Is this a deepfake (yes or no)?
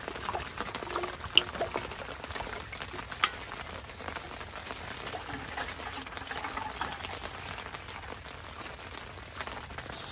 no